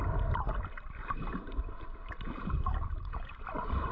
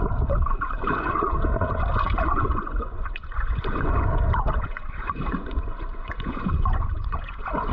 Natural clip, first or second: first